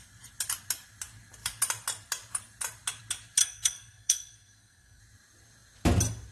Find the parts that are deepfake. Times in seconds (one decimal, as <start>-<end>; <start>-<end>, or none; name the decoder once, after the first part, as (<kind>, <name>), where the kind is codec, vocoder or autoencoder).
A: 3.4-5.0 (codec, SNAC)